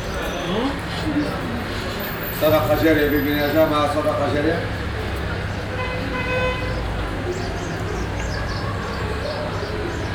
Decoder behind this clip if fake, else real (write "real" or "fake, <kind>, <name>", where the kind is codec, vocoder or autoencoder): real